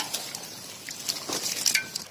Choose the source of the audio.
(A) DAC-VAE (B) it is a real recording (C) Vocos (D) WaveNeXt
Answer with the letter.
B